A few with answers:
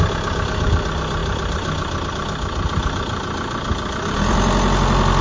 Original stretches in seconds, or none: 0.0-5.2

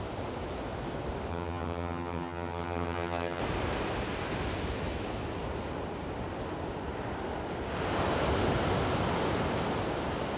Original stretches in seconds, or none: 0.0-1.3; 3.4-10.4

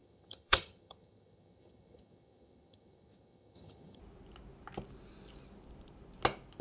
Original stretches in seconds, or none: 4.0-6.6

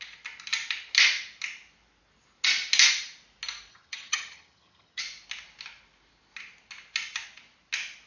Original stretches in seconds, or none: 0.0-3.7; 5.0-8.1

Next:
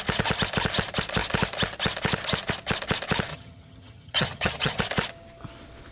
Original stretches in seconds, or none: 0.0-3.3; 4.8-5.9

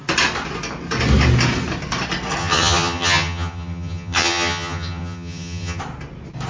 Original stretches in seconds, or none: 0.0-2.4; 5.8-6.5